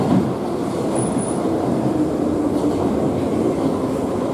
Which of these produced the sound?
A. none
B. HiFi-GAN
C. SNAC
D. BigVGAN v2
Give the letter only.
A